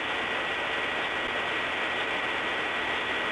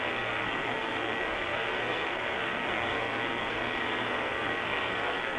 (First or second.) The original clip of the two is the first